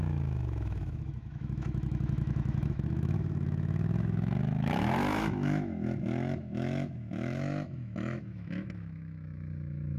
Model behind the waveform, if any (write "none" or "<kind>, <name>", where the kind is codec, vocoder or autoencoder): autoencoder, DAC-VAE